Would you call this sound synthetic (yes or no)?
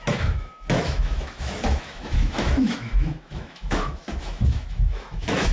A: yes